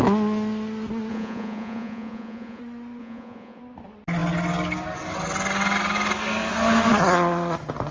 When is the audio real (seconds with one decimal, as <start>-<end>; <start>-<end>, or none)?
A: 0.0-1.1; 2.6-3.0; 3.6-7.9